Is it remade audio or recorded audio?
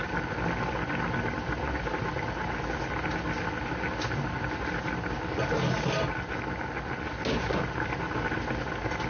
recorded